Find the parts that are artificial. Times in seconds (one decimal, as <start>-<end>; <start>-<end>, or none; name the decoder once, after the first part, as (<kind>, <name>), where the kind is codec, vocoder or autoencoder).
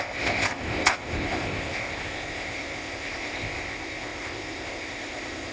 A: 0.0-5.5 (codec, ZipCodec)